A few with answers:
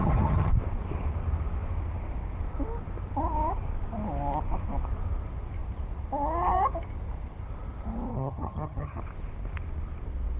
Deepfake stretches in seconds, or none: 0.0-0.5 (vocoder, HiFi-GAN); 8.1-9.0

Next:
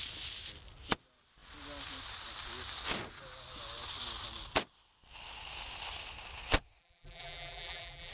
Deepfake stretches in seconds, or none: 6.8-8.1 (vocoder, BigVGAN v2)